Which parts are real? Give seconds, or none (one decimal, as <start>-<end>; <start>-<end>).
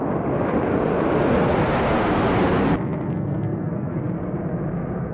0.0-3.1; 4.0-5.1